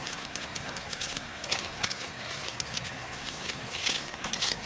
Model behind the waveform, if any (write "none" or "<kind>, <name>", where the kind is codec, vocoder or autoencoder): codec, SNAC